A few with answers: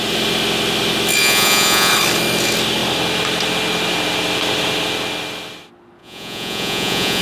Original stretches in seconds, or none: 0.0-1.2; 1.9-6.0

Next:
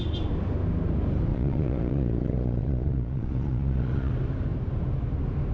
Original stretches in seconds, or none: 0.0-1.3; 4.1-5.5

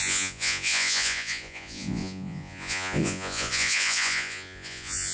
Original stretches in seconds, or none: none